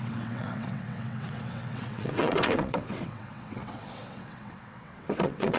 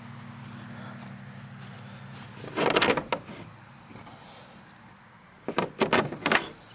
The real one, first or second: second